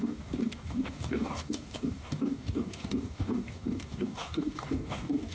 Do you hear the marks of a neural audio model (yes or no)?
yes